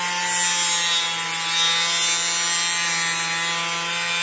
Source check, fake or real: real